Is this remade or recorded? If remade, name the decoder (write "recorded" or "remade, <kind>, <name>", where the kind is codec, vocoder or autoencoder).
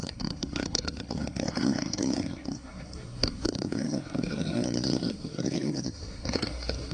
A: remade, codec, SNAC